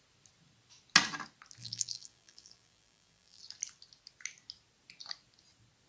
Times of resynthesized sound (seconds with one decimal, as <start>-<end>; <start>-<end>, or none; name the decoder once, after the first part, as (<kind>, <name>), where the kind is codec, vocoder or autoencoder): 1.6-3.4 (vocoder, BigVGAN v2)